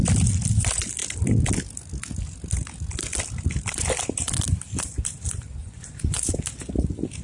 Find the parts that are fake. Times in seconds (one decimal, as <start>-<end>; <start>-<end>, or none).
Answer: 5.6-6.3